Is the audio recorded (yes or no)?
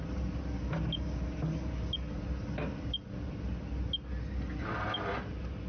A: yes